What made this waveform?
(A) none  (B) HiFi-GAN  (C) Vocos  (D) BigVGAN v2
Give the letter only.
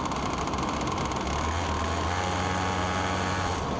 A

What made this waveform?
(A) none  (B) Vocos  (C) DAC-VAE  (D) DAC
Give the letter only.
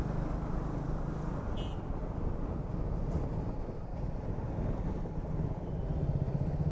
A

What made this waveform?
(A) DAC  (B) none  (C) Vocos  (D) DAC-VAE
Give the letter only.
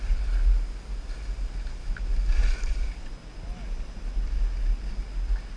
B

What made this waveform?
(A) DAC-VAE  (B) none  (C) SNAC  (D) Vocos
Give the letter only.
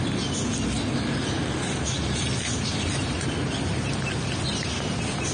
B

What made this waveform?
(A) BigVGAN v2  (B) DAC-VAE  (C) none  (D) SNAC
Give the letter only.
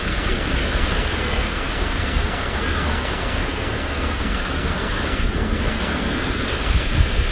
D